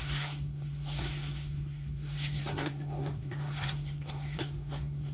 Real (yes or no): no